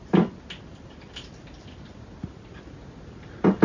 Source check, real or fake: real